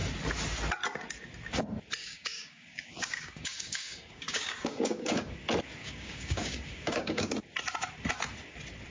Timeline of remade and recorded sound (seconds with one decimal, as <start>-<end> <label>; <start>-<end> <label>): 0.0-2.0 recorded; 2.0-5.3 remade; 5.3-5.8 recorded; 5.8-7.3 remade; 7.3-8.9 recorded